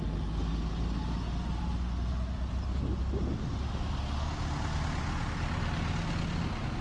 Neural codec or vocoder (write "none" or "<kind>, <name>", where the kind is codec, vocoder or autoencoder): none